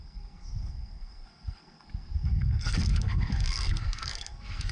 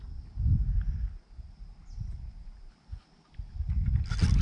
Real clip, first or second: second